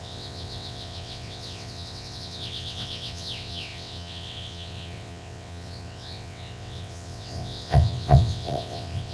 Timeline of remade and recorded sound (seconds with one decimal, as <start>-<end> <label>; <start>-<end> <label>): 0.0-9.1 remade